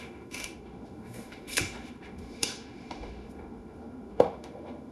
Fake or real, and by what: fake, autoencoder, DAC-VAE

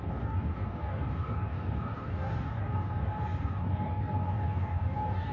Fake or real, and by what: fake, codec, DAC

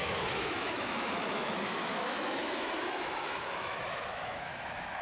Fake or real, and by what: fake, autoencoder, DAC-VAE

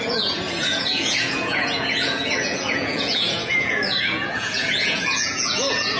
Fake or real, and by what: fake, vocoder, Vocos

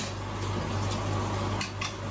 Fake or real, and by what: real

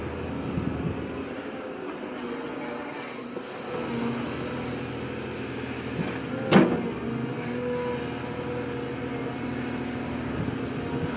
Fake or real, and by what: real